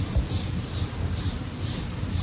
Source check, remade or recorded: remade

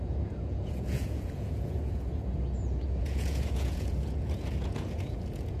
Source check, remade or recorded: remade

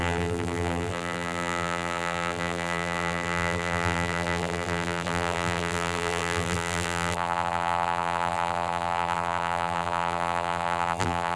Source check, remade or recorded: remade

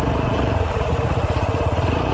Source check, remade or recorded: remade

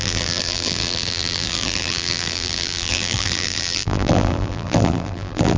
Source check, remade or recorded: remade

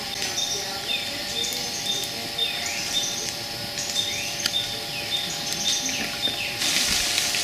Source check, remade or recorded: recorded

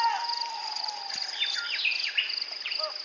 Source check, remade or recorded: recorded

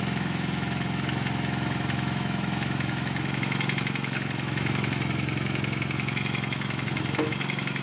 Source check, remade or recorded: remade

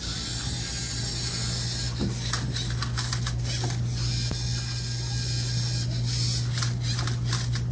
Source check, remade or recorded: recorded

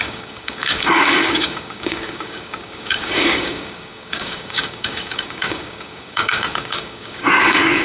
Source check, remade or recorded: remade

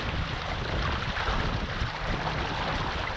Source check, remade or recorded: recorded